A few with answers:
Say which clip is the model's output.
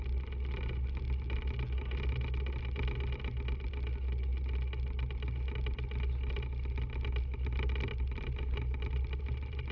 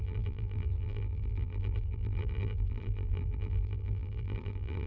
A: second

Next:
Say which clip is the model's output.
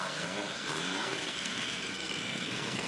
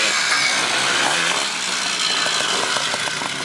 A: first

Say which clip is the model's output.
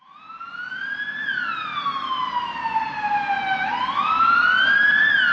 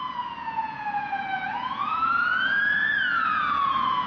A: second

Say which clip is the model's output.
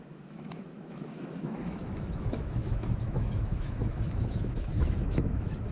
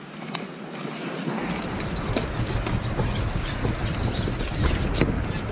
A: first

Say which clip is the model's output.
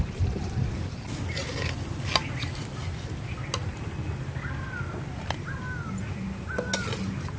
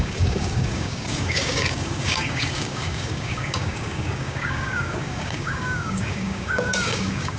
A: second